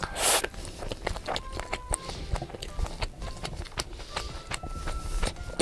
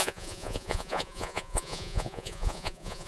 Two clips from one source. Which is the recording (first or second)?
first